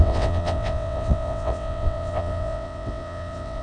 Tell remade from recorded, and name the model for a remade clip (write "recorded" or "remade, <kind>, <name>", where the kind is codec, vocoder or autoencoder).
remade, vocoder, WaveNeXt